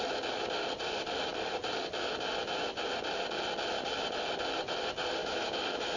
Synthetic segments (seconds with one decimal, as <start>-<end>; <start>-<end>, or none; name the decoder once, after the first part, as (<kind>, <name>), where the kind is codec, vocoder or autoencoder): 5.2-6.0 (autoencoder, DAC-VAE)